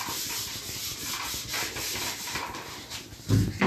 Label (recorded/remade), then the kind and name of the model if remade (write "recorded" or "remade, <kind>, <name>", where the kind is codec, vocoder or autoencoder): recorded